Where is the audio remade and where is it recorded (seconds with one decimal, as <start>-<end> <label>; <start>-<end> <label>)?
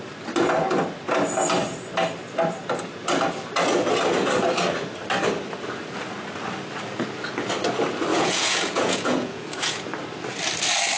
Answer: 0.0-8.1 recorded; 8.1-9.9 remade; 9.9-11.0 recorded